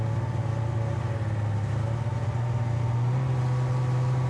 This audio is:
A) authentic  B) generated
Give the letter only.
A